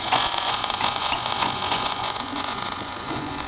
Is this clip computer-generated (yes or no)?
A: yes